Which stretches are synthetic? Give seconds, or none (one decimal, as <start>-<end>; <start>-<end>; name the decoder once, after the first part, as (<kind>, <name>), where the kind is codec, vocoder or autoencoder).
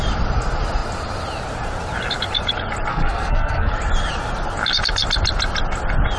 2.9-3.7 (codec, SNAC)